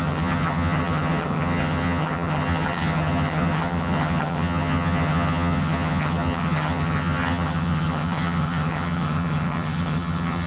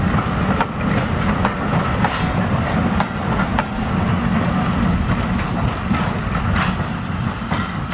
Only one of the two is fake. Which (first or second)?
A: first